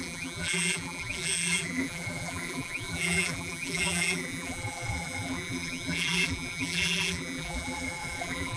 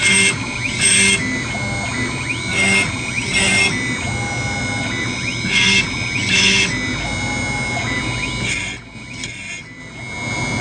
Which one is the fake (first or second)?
first